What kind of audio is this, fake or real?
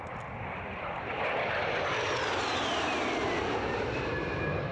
real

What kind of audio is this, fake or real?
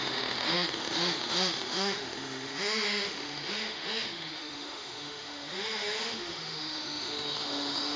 fake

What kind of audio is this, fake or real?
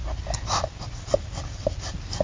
real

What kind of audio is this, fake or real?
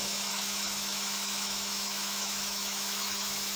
fake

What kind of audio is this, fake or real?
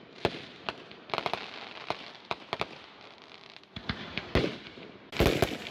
real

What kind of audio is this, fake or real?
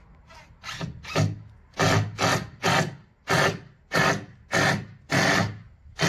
real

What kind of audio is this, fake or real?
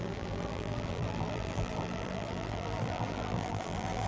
fake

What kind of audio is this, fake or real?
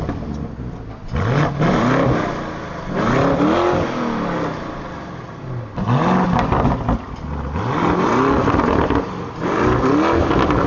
real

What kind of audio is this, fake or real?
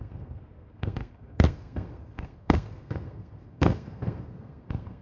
fake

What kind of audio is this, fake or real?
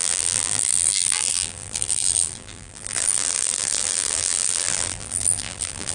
fake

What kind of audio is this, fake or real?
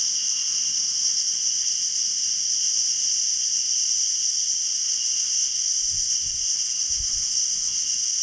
fake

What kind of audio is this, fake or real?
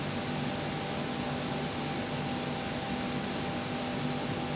real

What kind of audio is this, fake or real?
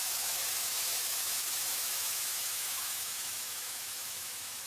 fake